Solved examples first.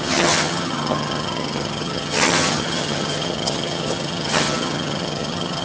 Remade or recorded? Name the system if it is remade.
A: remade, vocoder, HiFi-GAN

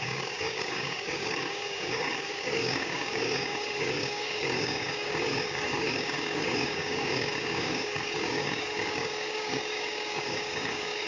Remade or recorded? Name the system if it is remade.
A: remade, codec, DAC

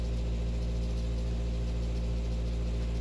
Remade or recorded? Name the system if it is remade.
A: recorded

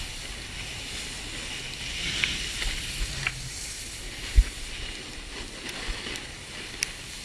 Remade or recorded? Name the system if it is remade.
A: recorded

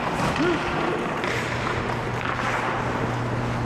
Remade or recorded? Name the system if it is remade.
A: recorded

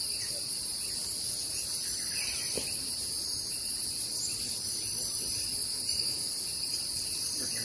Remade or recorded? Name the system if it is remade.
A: remade, vocoder, BigVGAN v2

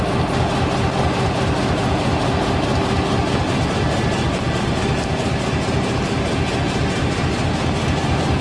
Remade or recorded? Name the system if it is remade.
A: recorded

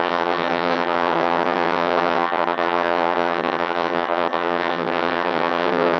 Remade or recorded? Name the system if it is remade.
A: remade, vocoder, HiFi-GAN